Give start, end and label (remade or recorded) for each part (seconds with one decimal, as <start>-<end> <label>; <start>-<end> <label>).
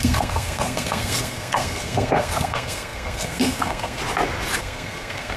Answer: 0.0-4.0 remade; 4.0-4.6 recorded; 4.6-5.4 remade